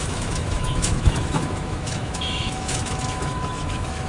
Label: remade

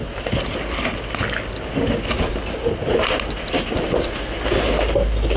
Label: recorded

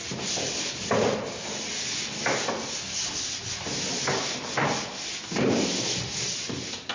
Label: recorded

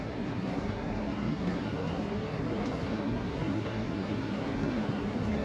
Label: remade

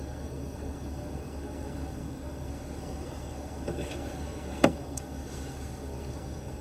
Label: remade